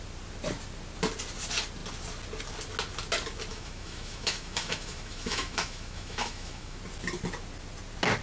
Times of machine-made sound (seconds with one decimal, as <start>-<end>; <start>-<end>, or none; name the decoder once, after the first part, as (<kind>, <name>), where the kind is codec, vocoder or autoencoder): 3.5-6.8 (autoencoder, DAC-VAE)